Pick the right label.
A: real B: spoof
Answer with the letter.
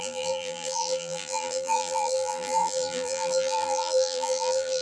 B